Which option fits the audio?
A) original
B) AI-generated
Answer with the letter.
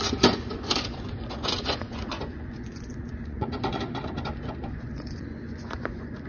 B